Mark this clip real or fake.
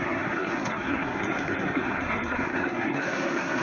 fake